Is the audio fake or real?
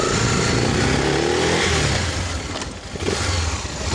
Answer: real